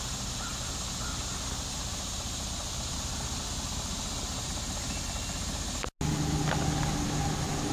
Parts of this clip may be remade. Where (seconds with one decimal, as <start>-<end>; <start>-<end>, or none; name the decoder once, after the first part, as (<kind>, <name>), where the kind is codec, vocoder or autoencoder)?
none